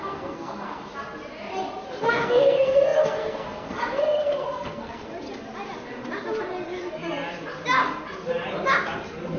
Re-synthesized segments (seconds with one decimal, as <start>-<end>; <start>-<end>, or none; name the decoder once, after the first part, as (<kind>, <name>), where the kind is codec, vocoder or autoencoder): 0.0-0.9 (codec, SNAC); 2.0-5.1